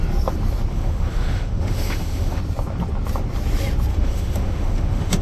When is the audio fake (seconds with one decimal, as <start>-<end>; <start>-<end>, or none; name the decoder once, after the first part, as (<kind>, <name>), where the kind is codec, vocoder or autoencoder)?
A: 0.7-2.4 (autoencoder, DAC-VAE); 3.9-5.2